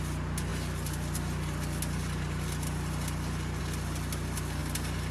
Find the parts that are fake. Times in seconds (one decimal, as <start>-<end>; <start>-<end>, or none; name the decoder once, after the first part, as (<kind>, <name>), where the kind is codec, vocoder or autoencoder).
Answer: none